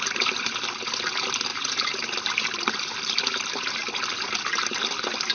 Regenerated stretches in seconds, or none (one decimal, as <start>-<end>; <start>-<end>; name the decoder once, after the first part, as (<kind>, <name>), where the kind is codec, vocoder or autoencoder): none